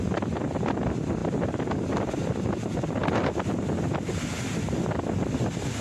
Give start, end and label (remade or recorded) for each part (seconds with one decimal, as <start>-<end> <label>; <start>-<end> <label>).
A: 0.0-5.8 recorded